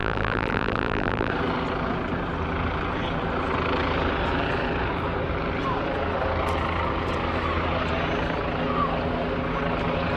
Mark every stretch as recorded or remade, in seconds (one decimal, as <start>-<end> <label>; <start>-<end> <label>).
0.0-1.3 remade; 1.3-10.2 recorded